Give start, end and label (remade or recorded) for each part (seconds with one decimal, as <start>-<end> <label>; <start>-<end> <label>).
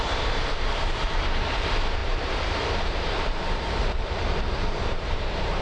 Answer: 0.0-5.6 remade